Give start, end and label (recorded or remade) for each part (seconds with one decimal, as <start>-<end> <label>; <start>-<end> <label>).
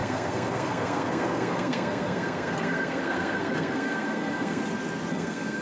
0.0-4.6 remade; 4.6-5.1 recorded; 5.1-5.6 remade